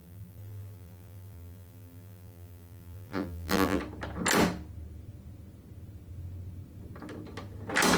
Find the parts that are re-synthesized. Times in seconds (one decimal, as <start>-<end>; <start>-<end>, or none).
0.0-3.8